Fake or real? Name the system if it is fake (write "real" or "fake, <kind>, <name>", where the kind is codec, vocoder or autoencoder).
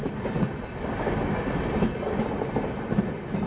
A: real